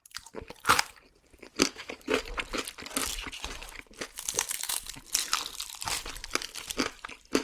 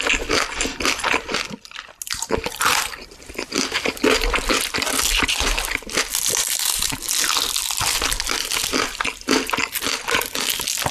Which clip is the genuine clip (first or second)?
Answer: second